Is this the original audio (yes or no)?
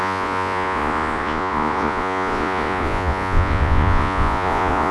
no